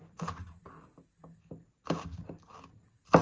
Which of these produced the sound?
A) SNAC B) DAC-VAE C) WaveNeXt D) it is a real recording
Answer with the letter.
D